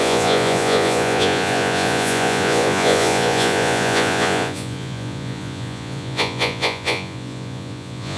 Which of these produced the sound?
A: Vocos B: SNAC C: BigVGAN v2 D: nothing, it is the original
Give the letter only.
A